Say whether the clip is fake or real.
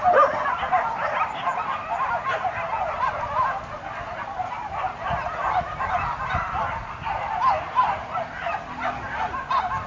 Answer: real